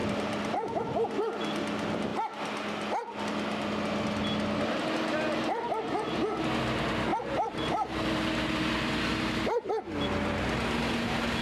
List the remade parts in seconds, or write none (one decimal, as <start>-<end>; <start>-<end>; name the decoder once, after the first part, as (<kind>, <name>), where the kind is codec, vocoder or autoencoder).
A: 0.0-0.8 (vocoder, BigVGAN v2); 7.1-9.7